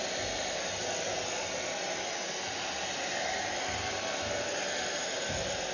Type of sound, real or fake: real